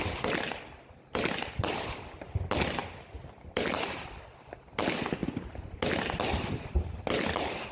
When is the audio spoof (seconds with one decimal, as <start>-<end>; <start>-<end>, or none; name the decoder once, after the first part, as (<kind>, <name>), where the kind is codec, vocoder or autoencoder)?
none

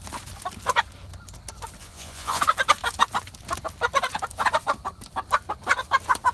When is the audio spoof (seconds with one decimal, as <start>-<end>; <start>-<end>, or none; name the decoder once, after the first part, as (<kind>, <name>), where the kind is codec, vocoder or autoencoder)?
1.8-2.4 (vocoder, Vocos)